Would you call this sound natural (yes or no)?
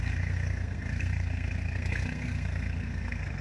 no